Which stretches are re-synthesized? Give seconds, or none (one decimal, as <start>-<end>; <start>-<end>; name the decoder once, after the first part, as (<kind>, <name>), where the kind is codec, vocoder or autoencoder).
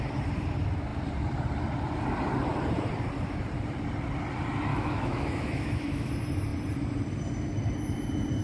4.7-6.1 (autoencoder, DAC-VAE)